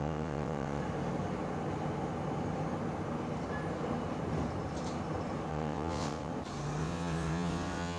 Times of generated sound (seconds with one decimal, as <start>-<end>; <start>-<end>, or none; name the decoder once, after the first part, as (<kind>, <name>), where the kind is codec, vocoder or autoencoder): 0.0-0.8 (vocoder, WaveNeXt); 5.5-6.3; 6.8-8.0